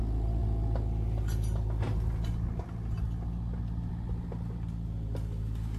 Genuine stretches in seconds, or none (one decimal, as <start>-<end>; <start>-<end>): 0.0-5.8